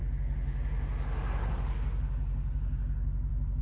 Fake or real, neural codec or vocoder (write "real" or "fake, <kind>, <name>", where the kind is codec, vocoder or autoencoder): real